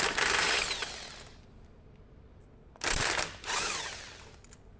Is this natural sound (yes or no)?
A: yes